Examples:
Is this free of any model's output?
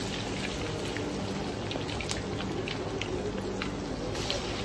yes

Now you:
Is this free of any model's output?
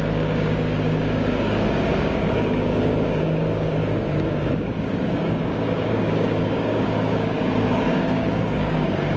no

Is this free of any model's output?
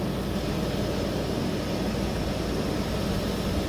yes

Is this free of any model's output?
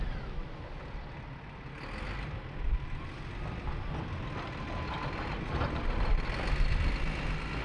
yes